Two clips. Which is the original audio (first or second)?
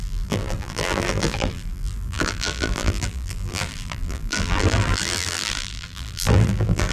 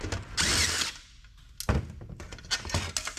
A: second